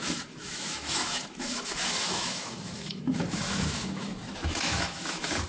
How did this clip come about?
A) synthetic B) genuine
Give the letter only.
A